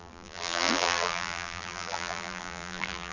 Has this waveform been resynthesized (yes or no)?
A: yes